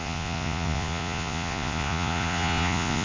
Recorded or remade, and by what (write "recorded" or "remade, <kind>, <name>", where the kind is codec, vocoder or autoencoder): remade, vocoder, Vocos